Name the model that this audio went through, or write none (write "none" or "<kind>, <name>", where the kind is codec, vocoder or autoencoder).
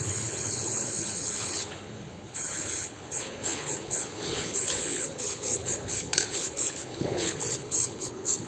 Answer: codec, HILCodec